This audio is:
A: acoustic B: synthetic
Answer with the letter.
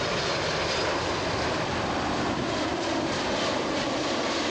B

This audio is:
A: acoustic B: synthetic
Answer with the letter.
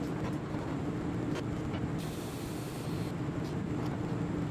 A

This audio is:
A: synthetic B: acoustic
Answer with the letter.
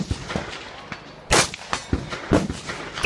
B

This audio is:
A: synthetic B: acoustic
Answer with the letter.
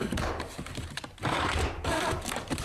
A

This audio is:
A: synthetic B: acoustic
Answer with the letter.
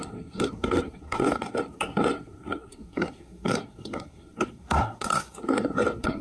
A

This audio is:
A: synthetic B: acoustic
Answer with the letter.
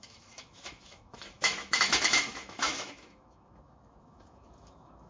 A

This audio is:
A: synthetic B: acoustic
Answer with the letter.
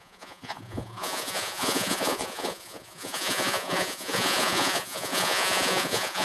A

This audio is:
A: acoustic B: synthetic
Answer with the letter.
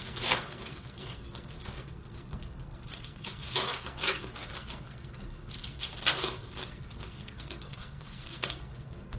B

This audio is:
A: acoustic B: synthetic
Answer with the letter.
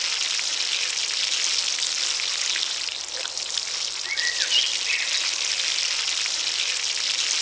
A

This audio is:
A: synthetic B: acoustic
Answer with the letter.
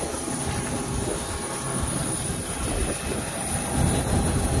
B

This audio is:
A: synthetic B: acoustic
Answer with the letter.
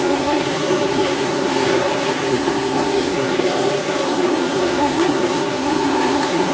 A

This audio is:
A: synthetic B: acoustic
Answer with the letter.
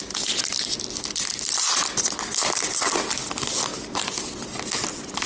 B